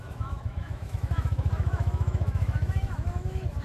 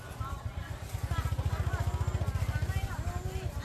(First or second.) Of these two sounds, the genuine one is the second